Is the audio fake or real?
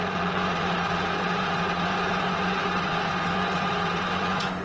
fake